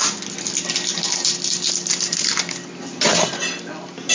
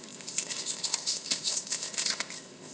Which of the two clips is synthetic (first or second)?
second